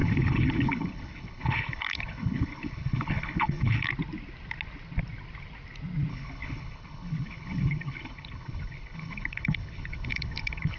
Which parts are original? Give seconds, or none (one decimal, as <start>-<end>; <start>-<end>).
3.9-6.1